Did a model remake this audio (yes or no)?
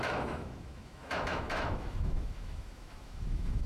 yes